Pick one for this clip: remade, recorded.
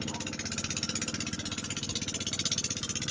recorded